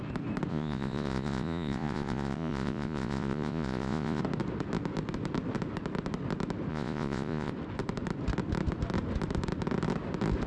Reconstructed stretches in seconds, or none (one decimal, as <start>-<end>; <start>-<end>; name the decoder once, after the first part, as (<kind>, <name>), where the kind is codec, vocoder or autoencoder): 0.5-4.2 (vocoder, Vocos); 6.7-7.5

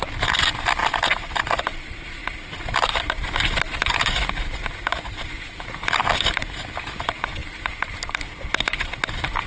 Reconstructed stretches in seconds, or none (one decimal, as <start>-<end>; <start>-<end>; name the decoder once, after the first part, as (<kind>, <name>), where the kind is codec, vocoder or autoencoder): none

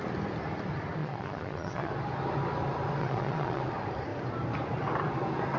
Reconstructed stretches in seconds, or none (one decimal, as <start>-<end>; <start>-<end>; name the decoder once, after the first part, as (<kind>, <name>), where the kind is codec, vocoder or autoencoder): 1.0-1.9 (vocoder, Vocos); 3.0-3.6

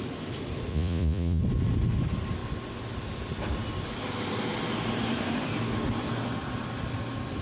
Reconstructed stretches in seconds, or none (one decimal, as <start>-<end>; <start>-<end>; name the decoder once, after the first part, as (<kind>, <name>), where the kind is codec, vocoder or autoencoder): 0.7-1.4 (vocoder, Vocos)

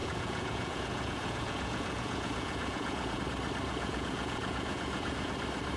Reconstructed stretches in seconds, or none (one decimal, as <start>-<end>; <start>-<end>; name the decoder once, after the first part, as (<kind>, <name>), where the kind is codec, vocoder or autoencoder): 0.0-3.2 (vocoder, Vocos); 3.7-5.3

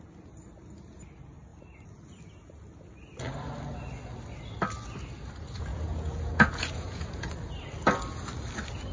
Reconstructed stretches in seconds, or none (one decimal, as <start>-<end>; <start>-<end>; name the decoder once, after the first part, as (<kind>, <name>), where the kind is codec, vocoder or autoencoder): 5.7-7.3 (vocoder, Vocos)